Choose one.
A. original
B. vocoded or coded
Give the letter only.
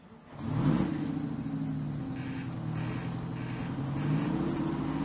A